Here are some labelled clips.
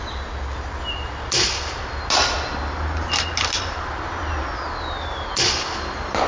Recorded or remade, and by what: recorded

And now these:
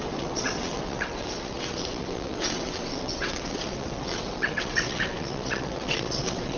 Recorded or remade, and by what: remade, vocoder, WaveNeXt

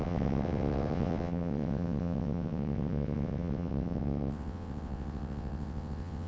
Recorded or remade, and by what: remade, vocoder, WaveNeXt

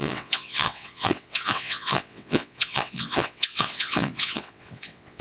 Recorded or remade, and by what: remade, vocoder, WaveNeXt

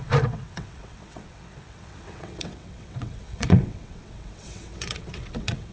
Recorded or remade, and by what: remade, vocoder, WaveNeXt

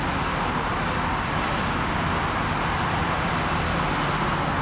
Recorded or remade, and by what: recorded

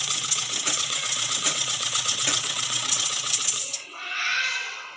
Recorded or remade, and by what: remade, vocoder, WaveNeXt